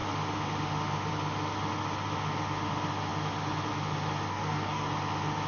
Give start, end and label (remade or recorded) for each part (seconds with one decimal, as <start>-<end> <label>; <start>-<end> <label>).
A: 0.0-4.3 recorded; 4.3-4.9 remade; 4.9-5.5 recorded